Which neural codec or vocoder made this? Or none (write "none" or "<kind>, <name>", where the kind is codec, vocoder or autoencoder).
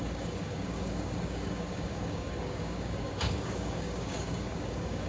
codec, DAC